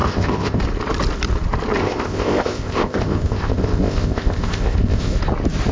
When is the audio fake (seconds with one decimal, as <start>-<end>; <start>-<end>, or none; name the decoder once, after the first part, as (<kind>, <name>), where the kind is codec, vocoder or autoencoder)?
0.0-0.6 (codec, ZipCodec); 1.8-5.2